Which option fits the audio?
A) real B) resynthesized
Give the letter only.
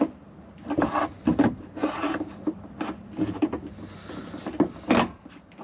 A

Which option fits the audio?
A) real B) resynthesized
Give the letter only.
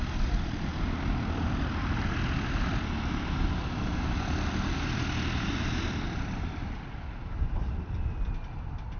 A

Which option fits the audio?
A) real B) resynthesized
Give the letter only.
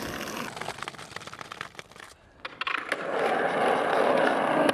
A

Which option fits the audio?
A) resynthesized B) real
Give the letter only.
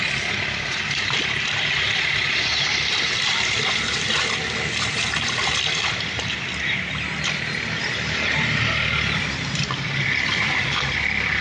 A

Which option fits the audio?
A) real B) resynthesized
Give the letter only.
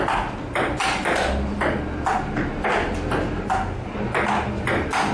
A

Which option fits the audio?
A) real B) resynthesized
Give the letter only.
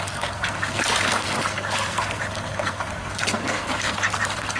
B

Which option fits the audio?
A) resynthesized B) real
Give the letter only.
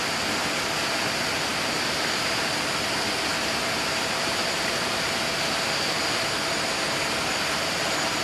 B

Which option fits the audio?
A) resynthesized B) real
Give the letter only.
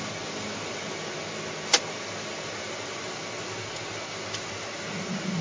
B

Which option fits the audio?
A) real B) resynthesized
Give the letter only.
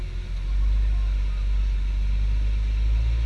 A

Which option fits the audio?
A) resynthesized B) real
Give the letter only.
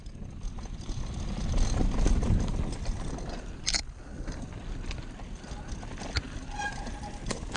B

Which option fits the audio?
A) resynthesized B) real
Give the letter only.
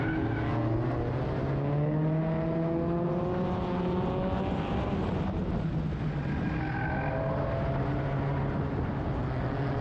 B